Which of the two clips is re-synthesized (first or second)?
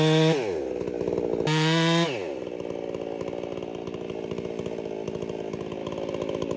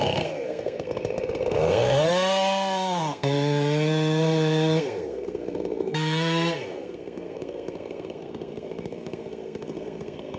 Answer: second